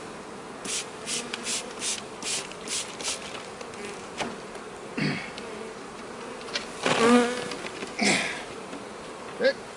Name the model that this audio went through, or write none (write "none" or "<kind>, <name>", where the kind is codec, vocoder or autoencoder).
none